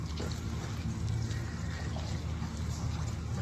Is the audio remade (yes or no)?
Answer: no